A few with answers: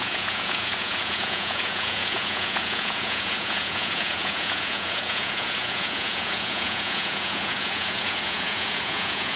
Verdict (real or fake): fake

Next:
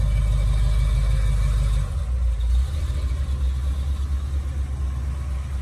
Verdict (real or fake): real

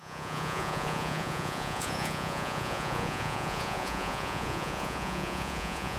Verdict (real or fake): fake